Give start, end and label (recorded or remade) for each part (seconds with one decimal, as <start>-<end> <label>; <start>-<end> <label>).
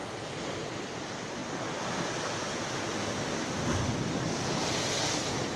0.0-5.6 recorded